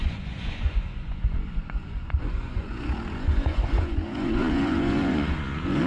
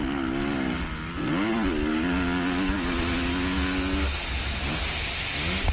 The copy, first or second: first